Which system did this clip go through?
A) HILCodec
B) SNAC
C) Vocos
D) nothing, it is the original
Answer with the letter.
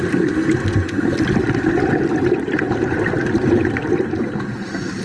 D